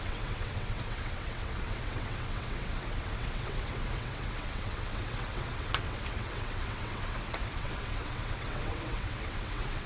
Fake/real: fake